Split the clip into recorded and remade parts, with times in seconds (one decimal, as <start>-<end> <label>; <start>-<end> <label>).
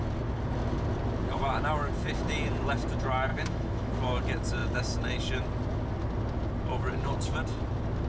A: 0.0-3.3 recorded; 3.3-3.9 remade; 3.9-8.1 recorded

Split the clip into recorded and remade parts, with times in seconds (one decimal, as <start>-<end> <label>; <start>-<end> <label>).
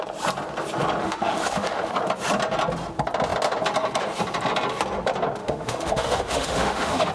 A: 0.0-1.0 recorded; 1.0-1.9 remade; 1.9-5.4 recorded; 5.4-7.1 remade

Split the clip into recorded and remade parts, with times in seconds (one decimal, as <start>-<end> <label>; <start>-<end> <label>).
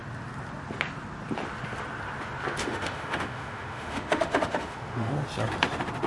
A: 0.0-2.6 recorded; 2.6-5.1 remade; 5.1-6.1 recorded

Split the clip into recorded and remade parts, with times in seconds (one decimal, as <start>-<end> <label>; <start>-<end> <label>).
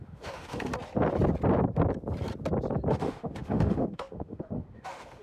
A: 0.0-0.7 remade; 0.7-2.9 recorded; 2.9-5.2 remade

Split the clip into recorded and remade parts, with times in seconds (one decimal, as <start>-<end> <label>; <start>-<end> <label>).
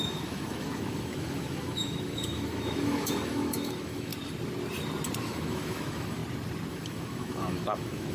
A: 0.0-4.1 remade; 4.1-5.2 recorded; 5.2-6.2 remade; 6.2-6.7 recorded; 6.7-8.1 remade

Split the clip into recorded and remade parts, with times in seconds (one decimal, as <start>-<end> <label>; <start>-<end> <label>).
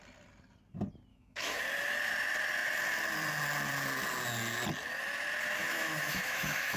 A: 0.0-1.1 recorded; 1.1-1.6 remade; 1.6-5.6 recorded; 5.6-6.8 remade